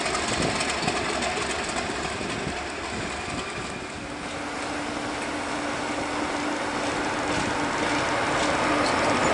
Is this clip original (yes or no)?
yes